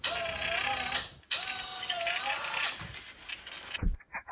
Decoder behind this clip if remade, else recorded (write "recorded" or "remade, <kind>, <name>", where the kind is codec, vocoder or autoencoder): recorded